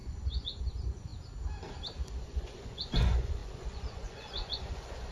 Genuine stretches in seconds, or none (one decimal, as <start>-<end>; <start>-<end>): 1.1-2.2